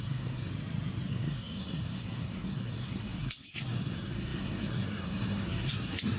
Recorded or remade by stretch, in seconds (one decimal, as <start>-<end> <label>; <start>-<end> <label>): 0.0-0.5 remade; 0.5-1.1 recorded; 1.1-6.2 remade